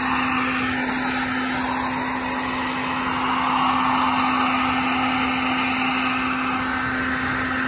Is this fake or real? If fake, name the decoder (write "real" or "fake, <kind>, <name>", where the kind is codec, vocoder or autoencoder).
real